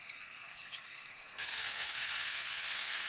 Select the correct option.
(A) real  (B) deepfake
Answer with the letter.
B